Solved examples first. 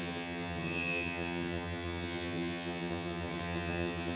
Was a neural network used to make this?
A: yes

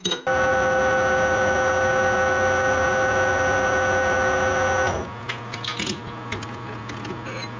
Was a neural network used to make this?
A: no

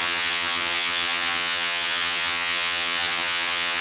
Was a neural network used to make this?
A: yes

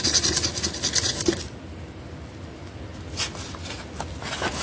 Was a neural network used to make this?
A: no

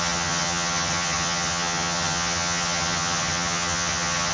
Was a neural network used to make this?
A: yes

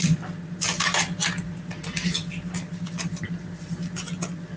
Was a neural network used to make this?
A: no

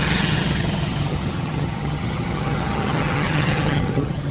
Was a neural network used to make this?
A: yes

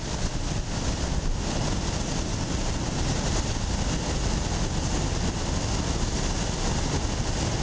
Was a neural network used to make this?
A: no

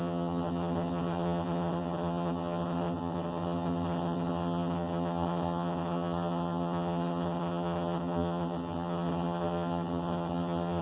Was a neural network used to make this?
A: yes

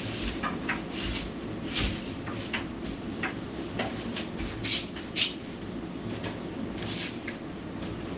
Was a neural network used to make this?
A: no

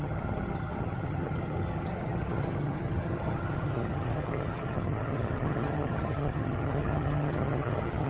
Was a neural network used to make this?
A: yes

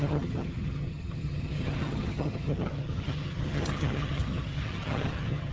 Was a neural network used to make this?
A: yes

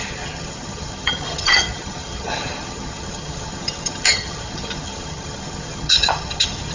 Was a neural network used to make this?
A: yes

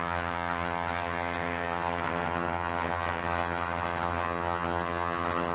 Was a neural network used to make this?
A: yes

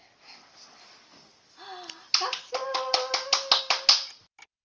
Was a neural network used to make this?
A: no